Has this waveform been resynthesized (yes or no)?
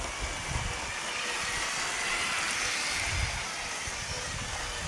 no